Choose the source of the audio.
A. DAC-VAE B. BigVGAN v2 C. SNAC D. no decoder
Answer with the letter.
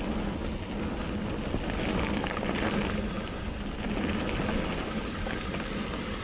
D